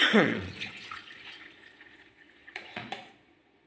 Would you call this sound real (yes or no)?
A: no